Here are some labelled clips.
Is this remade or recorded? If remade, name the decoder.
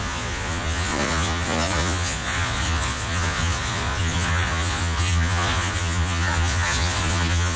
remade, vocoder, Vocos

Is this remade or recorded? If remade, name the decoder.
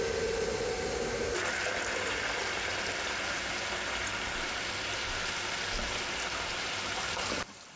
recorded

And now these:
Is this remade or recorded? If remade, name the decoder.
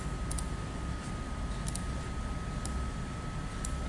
recorded